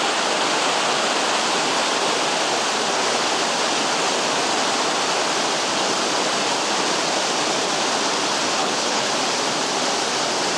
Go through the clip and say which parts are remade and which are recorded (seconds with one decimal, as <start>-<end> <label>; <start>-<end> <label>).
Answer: 0.0-8.6 recorded; 8.6-9.1 remade; 9.1-10.6 recorded